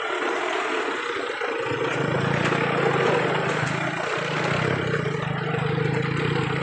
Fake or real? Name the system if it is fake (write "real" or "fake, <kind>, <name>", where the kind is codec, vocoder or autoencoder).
real